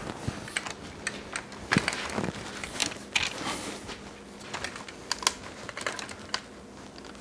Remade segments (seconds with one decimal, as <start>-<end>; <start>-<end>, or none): none